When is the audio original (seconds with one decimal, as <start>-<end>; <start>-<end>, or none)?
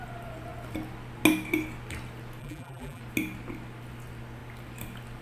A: 0.0-2.4; 3.0-5.2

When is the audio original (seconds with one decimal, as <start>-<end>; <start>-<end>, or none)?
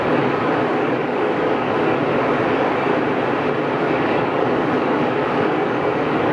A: 2.9-3.8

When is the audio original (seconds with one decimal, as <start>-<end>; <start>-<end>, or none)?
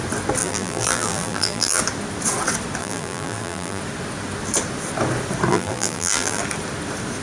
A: 0.0-0.4; 1.8-2.8; 3.8-5.5; 6.4-7.2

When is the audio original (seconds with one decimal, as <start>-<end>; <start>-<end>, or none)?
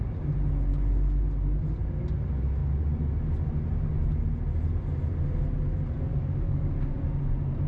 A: 0.0-0.7; 1.2-6.1; 6.7-7.7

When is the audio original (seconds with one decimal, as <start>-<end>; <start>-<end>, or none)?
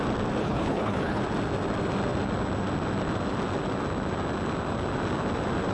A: 0.0-0.4; 1.2-5.7